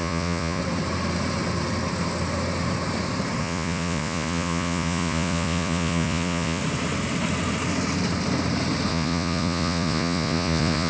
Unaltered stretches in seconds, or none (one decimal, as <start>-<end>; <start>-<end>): 0.6-3.4; 6.6-8.9